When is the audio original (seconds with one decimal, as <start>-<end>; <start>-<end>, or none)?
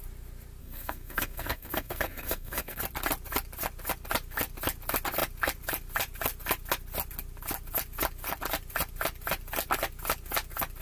0.0-0.6; 2.8-10.8